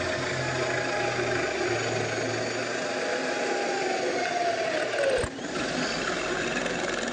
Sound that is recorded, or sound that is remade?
recorded